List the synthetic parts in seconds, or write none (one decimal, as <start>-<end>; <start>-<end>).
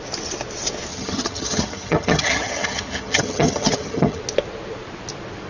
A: 0.9-4.2